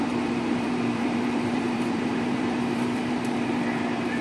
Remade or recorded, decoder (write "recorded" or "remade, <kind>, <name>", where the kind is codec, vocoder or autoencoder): remade, vocoder, BigVGAN v2